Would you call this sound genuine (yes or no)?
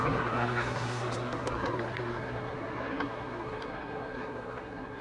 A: no